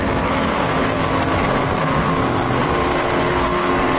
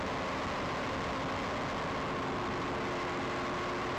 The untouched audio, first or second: second